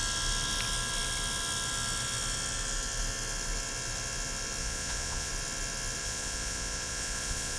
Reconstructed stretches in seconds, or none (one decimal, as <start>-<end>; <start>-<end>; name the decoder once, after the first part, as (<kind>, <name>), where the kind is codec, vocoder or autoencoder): 4.6-5.3 (vocoder, Vocos); 6.0-7.6